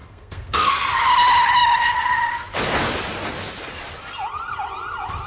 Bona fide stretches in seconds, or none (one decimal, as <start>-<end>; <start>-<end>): 0.7-5.3